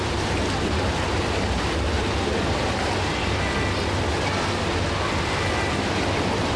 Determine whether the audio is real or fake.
real